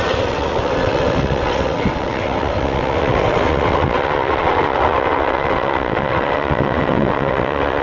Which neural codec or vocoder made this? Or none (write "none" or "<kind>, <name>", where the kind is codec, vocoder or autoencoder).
vocoder, WaveNeXt